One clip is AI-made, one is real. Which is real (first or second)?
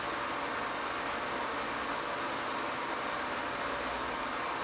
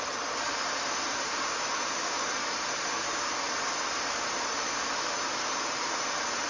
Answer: first